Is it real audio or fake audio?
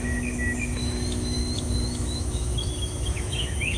fake